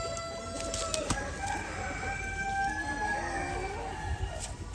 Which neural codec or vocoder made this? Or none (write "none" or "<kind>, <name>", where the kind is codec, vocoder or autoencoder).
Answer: none